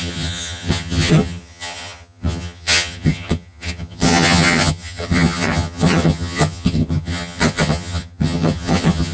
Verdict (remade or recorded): remade